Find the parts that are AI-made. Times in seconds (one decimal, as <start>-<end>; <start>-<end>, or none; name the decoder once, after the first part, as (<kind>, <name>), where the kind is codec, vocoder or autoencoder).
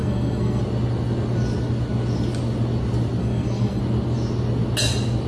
0.0-0.6 (codec, SNAC); 3.2-3.8